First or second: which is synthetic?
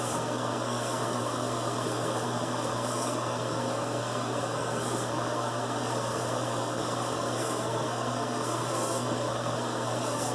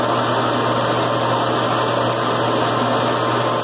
first